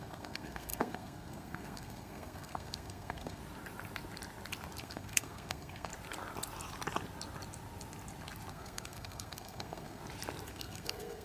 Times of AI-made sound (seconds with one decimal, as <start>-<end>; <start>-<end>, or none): 0.0-3.4; 4.8-5.9; 8.5-10.0; 10.5-11.2